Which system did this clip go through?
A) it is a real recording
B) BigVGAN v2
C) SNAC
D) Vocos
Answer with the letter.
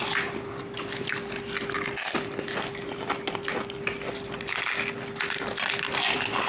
A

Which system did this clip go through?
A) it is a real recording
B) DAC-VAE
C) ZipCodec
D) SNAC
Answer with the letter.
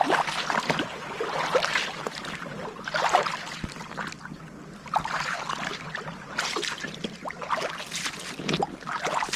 A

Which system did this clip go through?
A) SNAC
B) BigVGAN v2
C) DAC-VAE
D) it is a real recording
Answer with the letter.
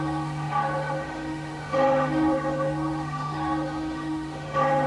C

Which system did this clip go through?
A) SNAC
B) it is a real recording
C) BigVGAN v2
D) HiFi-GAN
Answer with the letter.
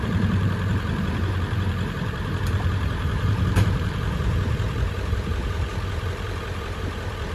C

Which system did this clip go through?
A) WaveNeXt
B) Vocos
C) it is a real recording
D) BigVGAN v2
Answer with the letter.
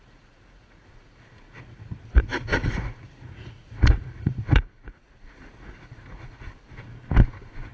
B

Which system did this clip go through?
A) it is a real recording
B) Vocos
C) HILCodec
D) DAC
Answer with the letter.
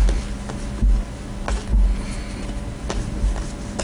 A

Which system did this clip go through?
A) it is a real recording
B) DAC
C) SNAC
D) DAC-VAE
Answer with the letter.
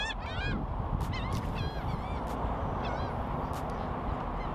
A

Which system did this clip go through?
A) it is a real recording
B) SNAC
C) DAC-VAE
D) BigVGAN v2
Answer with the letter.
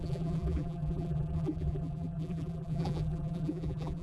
D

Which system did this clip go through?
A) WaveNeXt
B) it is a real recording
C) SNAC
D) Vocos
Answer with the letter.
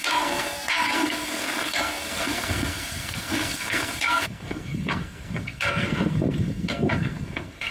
C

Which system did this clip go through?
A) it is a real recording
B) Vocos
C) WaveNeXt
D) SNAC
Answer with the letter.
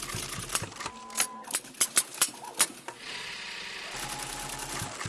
A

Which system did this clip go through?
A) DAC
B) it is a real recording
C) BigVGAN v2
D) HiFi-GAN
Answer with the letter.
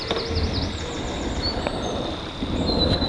B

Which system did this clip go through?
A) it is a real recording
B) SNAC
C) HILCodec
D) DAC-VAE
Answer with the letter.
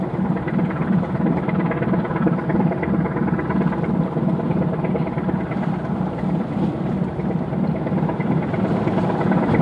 A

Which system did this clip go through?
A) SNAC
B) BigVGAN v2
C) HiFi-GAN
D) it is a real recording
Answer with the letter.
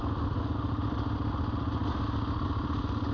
D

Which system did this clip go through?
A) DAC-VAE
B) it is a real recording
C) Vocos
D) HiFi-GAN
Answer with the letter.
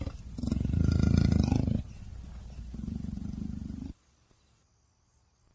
B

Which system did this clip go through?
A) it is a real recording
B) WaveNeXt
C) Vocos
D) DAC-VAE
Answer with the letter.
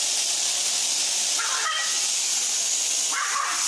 A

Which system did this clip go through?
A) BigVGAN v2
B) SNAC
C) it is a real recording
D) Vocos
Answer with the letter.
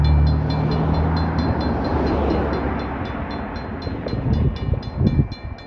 C